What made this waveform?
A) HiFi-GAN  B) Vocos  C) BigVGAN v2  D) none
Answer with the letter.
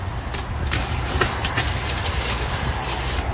D